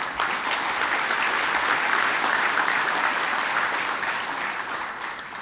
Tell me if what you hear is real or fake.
real